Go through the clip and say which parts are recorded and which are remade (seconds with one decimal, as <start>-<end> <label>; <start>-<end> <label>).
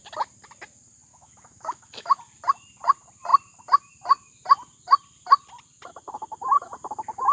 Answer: 0.0-1.1 recorded; 1.1-2.2 remade; 2.2-7.3 recorded